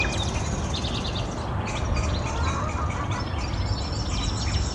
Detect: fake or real real